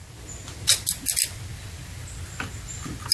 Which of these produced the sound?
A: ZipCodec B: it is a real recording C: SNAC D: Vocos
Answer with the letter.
B